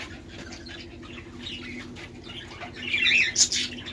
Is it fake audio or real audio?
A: real